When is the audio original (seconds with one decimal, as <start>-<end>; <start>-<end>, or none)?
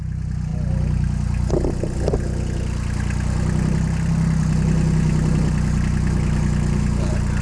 0.0-7.4